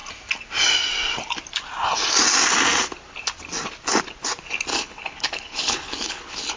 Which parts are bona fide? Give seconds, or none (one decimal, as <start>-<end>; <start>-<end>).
0.0-4.7